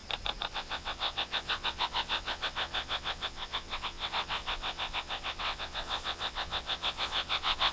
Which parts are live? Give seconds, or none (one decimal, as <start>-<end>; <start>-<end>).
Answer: 0.0-0.5